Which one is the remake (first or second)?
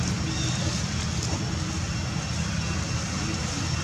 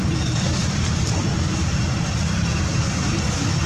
second